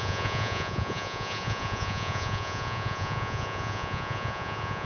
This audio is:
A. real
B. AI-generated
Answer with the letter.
B